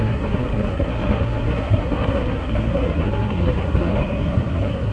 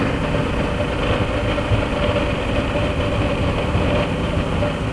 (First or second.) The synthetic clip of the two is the first